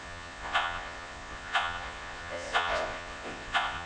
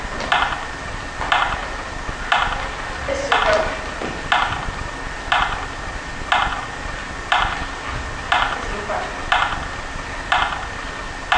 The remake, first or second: first